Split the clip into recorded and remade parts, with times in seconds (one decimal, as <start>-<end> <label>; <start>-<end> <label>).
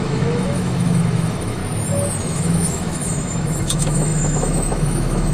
0.0-1.6 remade; 1.6-2.2 recorded; 2.2-5.3 remade